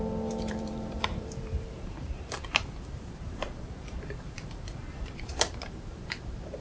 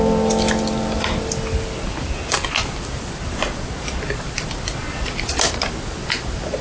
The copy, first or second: first